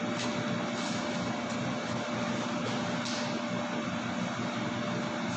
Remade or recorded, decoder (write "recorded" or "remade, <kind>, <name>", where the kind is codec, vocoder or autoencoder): recorded